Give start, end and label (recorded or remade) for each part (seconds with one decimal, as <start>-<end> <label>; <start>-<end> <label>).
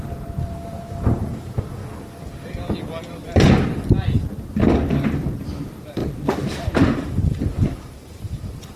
0.0-1.8 remade; 1.8-4.4 recorded; 4.4-8.8 remade